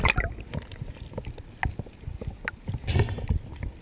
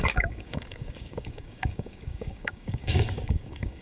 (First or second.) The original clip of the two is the first